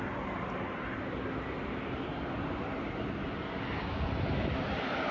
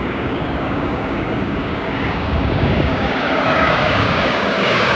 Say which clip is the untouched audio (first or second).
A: first